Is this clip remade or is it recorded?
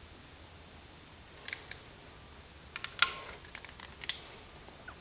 recorded